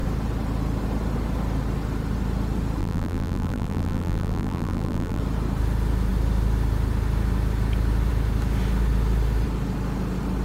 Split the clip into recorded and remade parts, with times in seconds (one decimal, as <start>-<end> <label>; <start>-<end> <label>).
0.0-2.8 recorded; 2.8-5.2 remade; 5.2-10.4 recorded

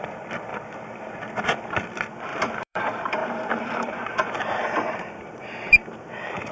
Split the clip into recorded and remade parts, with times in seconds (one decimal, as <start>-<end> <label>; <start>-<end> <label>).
0.0-0.5 recorded; 0.5-1.2 remade; 1.2-2.3 recorded; 2.3-2.8 remade; 2.8-3.2 recorded; 3.2-6.5 remade

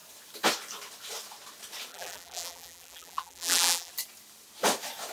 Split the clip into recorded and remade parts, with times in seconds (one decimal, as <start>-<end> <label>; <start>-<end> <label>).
0.0-1.9 recorded; 1.9-3.9 remade; 3.9-5.1 recorded

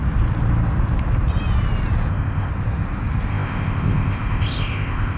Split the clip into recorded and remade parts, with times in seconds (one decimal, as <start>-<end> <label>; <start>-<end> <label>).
0.0-2.1 recorded; 2.1-2.5 remade; 2.5-3.3 recorded; 3.3-5.2 remade

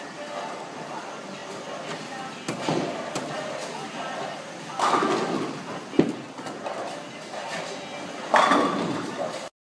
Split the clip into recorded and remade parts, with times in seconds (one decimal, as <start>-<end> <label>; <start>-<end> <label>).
0.0-9.6 recorded